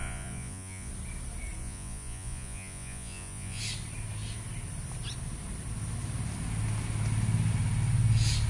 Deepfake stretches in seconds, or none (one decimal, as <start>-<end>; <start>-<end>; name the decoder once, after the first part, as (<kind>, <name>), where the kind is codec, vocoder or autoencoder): 0.0-0.9 (vocoder, Vocos); 1.6-3.6